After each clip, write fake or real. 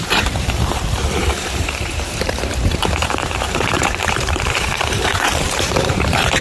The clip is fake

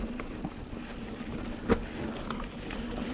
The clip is real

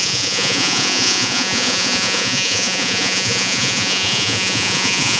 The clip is fake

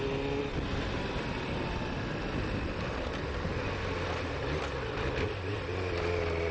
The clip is real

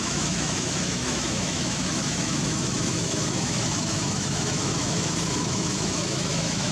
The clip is fake